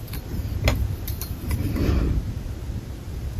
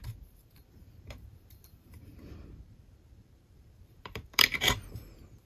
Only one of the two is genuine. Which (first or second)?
first